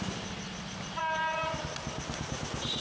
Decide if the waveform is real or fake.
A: real